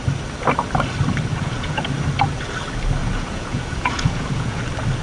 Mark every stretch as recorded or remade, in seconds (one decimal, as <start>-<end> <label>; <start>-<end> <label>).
0.0-1.3 recorded; 1.3-1.8 remade; 1.8-3.0 recorded; 3.0-4.6 remade; 4.6-5.0 recorded